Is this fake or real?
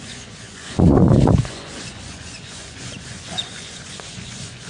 fake